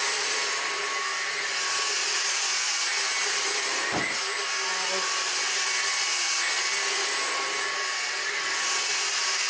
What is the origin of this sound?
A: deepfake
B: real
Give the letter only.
B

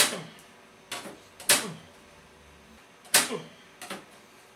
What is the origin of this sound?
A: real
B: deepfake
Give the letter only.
A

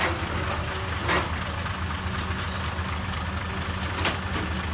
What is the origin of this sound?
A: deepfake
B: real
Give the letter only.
B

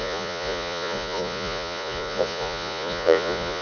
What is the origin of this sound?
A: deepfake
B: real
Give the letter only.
A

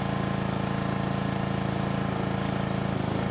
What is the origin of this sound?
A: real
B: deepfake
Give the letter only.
A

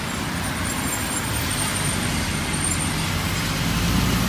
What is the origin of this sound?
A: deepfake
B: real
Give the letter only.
B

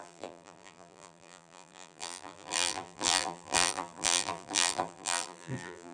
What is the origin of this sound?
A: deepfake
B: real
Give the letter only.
A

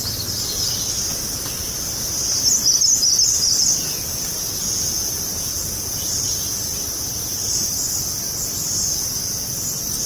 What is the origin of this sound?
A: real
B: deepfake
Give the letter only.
A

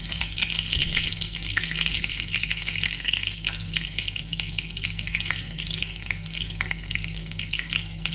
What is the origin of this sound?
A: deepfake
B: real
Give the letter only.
A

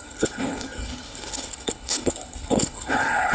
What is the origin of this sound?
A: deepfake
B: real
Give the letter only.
A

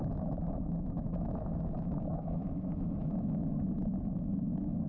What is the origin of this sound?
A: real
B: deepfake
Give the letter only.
B